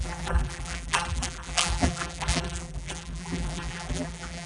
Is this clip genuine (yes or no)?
no